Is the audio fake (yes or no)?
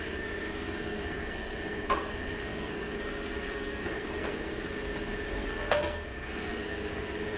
yes